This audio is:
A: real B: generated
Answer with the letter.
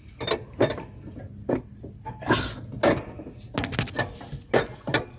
A